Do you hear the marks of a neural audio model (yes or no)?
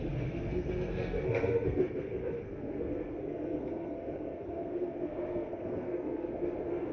yes